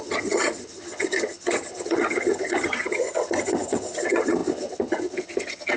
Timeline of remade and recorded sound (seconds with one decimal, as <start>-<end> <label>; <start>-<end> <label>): 0.0-5.8 remade